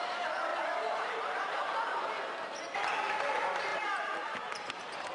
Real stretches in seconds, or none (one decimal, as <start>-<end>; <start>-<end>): 0.0-0.5; 2.3-3.7